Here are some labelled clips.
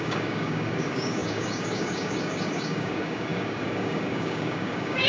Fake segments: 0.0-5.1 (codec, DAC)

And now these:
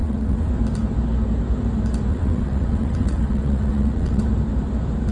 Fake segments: 0.0-0.5 (vocoder, WaveNeXt); 2.1-4.2

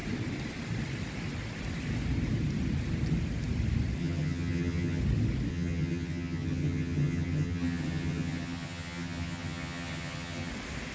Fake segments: 4.0-5.0 (vocoder, HiFi-GAN); 5.5-10.5

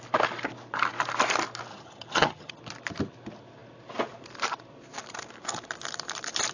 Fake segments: 1.7-2.6 (vocoder, HiFi-GAN)

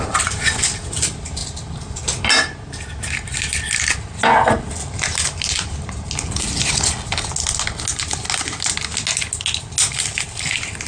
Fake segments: none

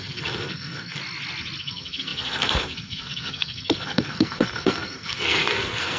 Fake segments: 0.0-1.0 (codec, SNAC); 1.6-6.0

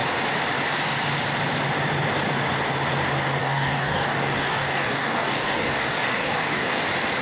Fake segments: 3.4-6.8 (codec, DAC)

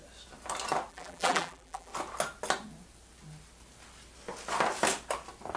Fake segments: 0.9-1.9 (vocoder, BigVGAN v2)